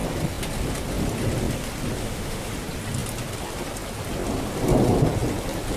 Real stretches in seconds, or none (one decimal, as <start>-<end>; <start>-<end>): 0.0-2.0; 2.5-5.8